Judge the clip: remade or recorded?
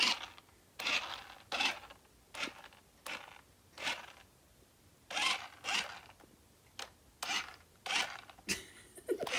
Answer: recorded